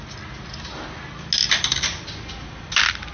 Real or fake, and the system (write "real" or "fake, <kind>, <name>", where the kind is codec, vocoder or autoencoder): real